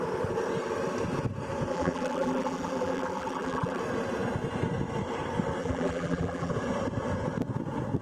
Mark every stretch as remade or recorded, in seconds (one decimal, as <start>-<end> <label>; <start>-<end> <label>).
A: 0.0-1.7 recorded; 1.7-3.8 remade; 3.8-5.6 recorded; 5.6-6.5 remade; 6.5-8.0 recorded